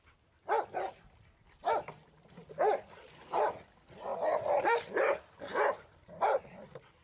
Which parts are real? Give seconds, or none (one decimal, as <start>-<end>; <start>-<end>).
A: 0.0-7.0